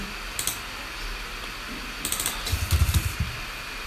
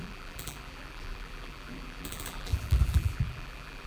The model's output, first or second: second